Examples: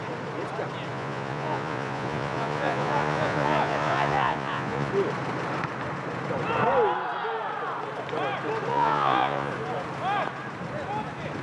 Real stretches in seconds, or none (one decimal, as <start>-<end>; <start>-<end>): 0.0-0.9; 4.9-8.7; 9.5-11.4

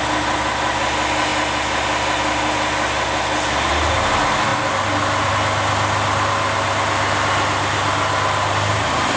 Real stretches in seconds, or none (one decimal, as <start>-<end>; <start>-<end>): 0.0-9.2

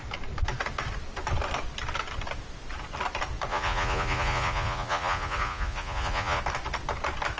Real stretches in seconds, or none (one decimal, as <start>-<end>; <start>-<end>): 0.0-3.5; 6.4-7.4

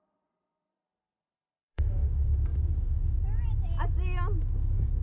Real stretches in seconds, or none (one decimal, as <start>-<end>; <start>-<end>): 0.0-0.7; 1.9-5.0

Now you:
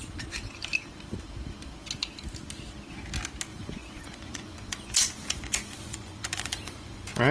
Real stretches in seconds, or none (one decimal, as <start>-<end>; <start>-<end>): 0.0-3.5